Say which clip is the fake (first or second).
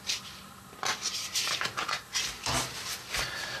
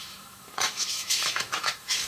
second